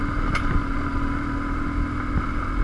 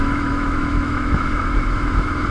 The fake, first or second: second